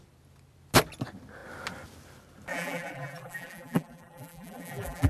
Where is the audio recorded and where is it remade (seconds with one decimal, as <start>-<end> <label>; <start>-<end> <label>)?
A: 0.0-2.5 recorded; 2.5-5.1 remade